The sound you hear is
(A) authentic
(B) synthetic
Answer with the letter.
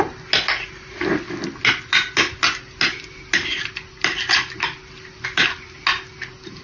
A